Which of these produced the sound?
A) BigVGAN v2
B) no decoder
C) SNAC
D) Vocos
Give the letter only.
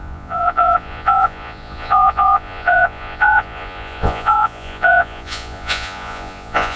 D